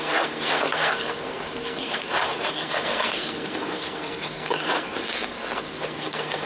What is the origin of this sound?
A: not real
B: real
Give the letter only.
A